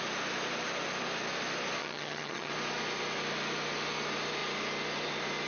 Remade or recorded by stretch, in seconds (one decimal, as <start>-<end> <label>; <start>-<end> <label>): 0.0-1.8 recorded; 1.8-2.5 remade; 2.5-5.5 recorded